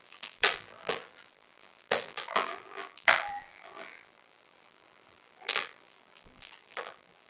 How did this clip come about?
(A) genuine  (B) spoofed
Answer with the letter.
B